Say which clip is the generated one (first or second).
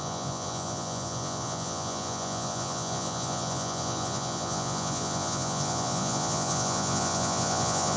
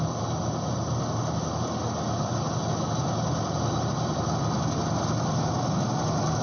first